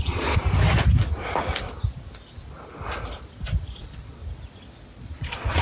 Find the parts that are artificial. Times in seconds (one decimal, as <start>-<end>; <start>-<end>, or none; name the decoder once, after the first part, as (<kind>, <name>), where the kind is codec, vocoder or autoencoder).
0.0-0.4 (vocoder, Vocos); 3.8-4.2; 4.9-5.6